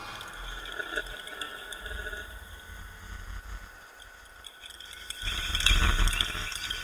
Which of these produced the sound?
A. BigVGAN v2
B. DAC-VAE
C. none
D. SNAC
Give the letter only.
C